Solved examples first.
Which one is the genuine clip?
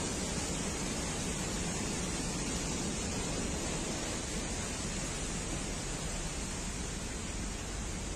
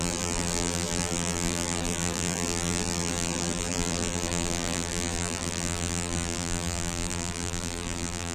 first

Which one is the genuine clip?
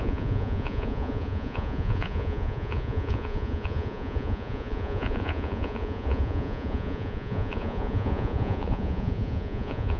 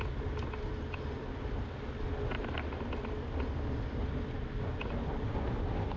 second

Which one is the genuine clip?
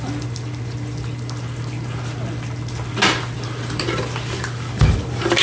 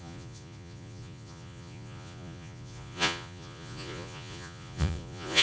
first